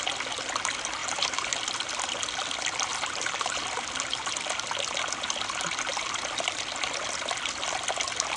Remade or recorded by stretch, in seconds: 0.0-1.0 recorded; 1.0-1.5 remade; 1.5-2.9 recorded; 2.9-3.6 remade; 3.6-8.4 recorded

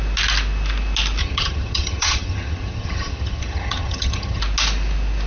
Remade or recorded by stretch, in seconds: 0.0-1.2 recorded; 1.2-4.4 remade; 4.4-5.3 recorded

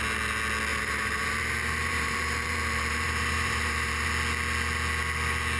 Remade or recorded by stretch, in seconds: 0.0-0.7 recorded; 0.7-4.1 remade; 4.1-5.6 recorded